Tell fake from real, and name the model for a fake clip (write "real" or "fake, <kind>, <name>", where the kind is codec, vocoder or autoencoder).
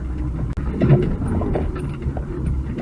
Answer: real